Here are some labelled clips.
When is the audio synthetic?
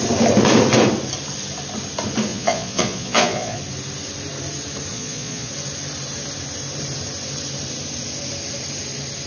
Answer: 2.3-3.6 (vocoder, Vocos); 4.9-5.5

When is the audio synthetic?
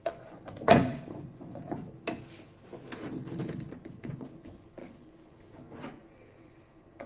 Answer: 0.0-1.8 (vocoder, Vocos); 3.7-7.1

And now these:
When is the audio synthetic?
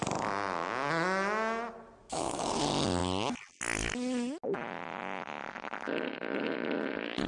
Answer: 2.0-2.6 (autoencoder, DAC-VAE)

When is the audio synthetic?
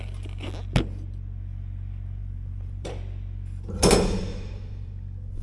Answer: 2.2-3.0 (vocoder, BigVGAN v2); 4.3-4.9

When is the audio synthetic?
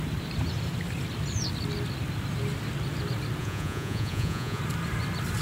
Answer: 3.4-4.6 (vocoder, Vocos)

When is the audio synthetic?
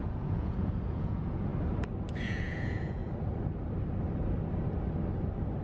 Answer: 0.0-1.5 (vocoder, Vocos); 2.2-3.0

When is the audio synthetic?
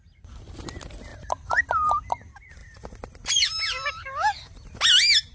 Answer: none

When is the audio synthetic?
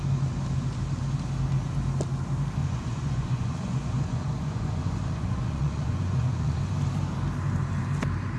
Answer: 2.6-6.6 (vocoder, Vocos)